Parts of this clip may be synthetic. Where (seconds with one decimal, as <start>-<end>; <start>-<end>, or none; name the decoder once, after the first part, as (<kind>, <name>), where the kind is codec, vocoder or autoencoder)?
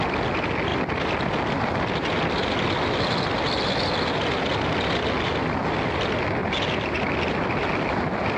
none